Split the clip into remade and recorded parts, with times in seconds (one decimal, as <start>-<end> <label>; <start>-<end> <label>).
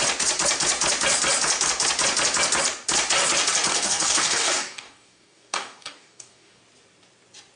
0.0-3.7 recorded; 3.7-6.6 remade; 6.6-7.6 recorded